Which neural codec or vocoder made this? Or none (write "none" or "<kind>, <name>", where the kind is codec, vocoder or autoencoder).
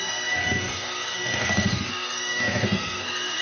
codec, SNAC